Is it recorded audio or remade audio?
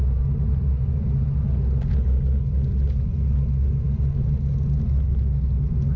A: recorded